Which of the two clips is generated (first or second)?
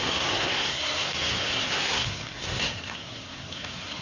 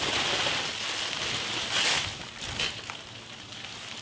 first